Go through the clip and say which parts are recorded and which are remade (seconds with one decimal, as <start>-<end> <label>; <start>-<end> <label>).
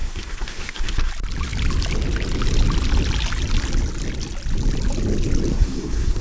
0.0-1.1 remade; 1.1-5.5 recorded; 5.5-6.2 remade